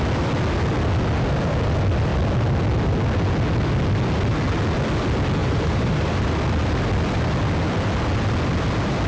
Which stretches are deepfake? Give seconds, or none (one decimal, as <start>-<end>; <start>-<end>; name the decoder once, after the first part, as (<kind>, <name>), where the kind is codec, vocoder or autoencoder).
5.4-6.3 (vocoder, BigVGAN v2)